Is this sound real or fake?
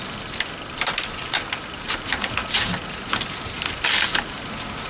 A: real